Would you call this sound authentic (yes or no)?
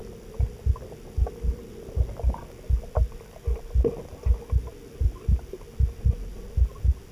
yes